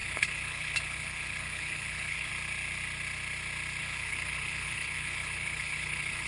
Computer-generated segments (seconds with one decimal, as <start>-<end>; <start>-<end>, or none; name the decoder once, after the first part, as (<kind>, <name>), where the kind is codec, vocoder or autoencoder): 0.0-2.3 (codec, HILCodec); 3.8-6.3